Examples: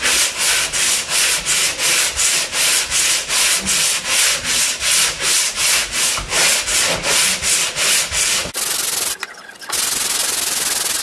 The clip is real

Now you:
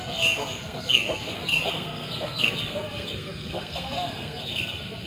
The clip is fake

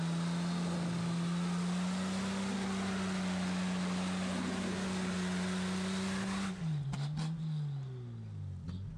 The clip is real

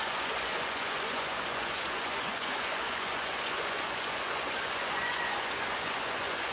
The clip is fake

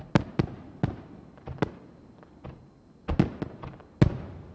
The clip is real